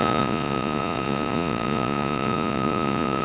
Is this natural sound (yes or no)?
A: no